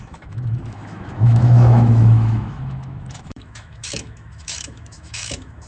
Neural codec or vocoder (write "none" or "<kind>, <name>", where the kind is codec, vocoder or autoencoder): autoencoder, DAC-VAE